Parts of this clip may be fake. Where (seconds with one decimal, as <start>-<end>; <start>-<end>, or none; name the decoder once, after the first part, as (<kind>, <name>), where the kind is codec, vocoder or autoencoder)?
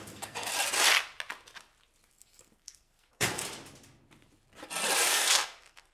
0.0-0.5 (codec, SNAC); 2.1-3.4; 5.1-5.9